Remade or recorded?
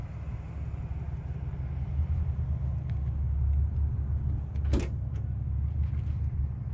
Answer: recorded